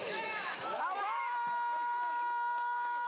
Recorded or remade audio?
remade